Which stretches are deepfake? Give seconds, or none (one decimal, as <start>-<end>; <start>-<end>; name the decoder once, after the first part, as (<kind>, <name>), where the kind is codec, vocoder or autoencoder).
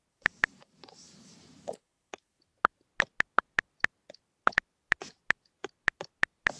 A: 0.4-2.3 (vocoder, BigVGAN v2)